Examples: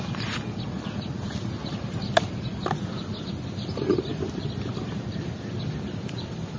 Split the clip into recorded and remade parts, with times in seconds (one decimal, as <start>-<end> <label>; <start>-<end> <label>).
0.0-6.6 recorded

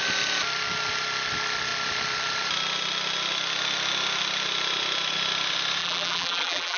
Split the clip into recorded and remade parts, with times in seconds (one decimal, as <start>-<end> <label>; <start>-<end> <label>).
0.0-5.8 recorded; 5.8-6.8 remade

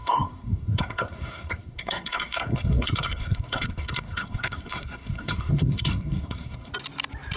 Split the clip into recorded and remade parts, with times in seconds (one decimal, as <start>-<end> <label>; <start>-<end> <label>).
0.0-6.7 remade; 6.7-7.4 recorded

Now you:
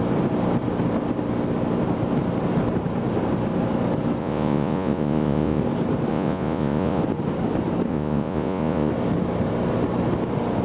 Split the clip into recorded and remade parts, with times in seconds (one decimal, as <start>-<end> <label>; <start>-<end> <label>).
0.0-4.2 recorded; 4.2-5.6 remade; 5.6-6.1 recorded; 6.1-7.0 remade; 7.0-7.9 recorded; 7.9-8.9 remade; 8.9-10.6 recorded

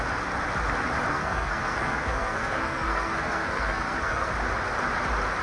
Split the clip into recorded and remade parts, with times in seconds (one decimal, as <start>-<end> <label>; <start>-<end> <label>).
0.0-1.1 recorded; 1.1-4.3 remade; 4.3-5.4 recorded

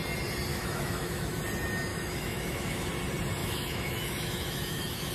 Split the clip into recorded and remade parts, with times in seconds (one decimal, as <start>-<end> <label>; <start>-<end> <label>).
0.0-0.5 recorded; 0.5-1.4 remade; 1.4-1.9 recorded; 1.9-2.9 remade; 2.9-3.4 recorded; 3.4-5.1 remade

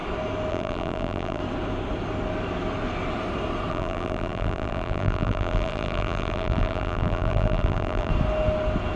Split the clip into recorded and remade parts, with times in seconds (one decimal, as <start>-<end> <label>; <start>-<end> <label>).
0.0-0.5 recorded; 0.5-1.4 remade; 1.4-3.7 recorded; 3.7-8.1 remade; 8.1-9.0 recorded

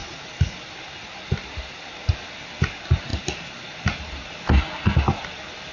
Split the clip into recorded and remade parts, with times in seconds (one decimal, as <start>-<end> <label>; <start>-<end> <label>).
0.0-2.1 remade; 2.1-3.1 recorded; 3.1-4.3 remade; 4.3-5.7 recorded